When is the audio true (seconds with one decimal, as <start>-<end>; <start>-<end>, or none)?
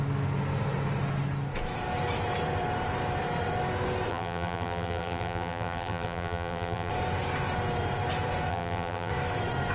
0.0-4.1; 6.9-8.5; 9.1-9.7